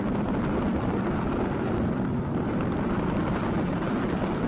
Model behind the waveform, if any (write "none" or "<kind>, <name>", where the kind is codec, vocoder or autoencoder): none